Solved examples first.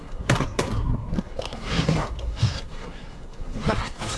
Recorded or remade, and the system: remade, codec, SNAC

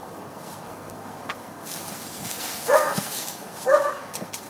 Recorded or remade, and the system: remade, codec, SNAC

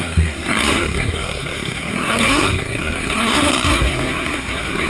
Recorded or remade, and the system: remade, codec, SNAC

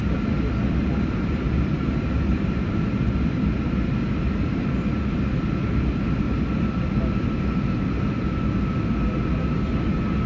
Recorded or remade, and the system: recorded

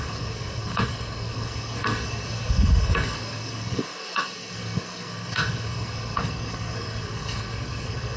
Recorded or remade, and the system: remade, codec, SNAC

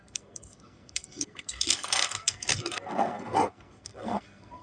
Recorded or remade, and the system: remade, codec, SNAC